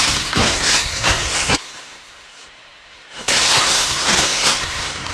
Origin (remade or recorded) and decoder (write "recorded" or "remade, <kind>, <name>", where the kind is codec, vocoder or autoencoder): remade, codec, SNAC